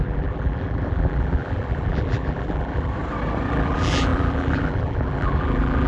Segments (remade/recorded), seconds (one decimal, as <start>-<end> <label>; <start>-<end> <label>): 0.0-2.9 remade; 2.9-3.5 recorded; 3.5-5.9 remade